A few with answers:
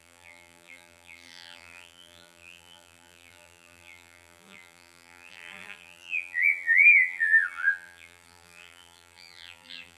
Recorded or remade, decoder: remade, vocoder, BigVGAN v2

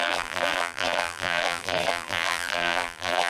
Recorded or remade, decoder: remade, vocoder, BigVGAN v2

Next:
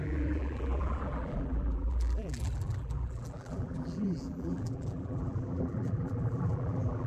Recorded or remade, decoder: remade, vocoder, BigVGAN v2